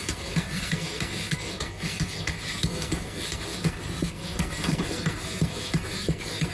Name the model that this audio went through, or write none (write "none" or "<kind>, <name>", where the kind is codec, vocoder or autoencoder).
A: codec, SNAC